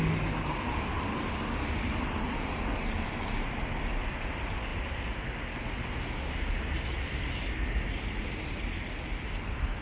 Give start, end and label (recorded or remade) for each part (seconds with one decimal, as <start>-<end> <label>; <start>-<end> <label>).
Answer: 0.0-9.8 recorded